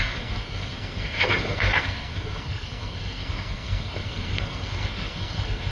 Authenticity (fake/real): fake